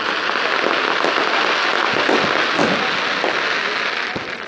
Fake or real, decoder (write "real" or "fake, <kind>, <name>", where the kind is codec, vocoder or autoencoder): real